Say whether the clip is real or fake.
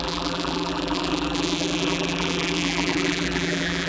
fake